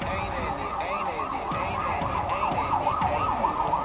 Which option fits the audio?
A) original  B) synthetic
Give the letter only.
A